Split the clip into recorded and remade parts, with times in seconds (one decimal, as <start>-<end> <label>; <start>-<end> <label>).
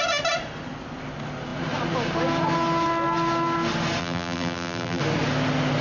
0.0-4.0 recorded; 4.0-5.0 remade; 5.0-5.8 recorded